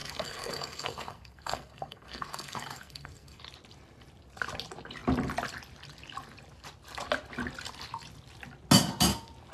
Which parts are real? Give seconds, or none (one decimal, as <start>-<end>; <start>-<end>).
3.4-9.5